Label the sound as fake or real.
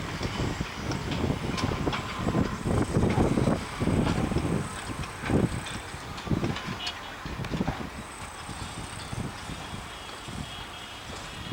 real